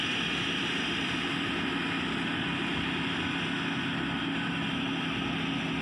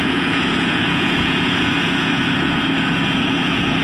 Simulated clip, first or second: second